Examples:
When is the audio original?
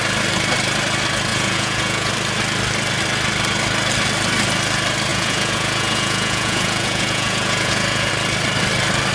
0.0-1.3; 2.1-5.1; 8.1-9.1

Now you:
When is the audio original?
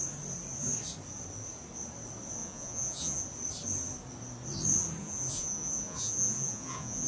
0.0-2.4; 3.2-5.0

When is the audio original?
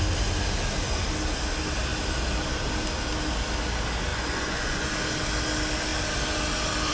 0.0-4.1; 4.9-6.9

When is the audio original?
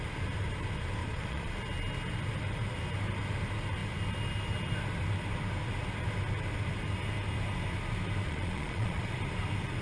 0.0-1.0; 1.5-8.2; 9.2-9.8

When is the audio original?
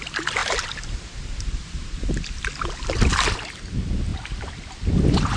0.0-5.4